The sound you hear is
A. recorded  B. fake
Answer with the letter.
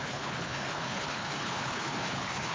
B